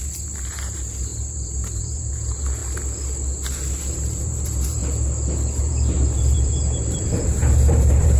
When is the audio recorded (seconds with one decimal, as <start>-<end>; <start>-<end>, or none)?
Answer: 2.6-3.9; 4.8-5.6